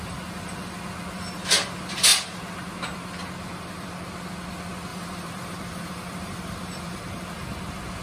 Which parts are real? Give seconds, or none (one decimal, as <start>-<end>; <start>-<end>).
0.0-4.9; 7.0-8.0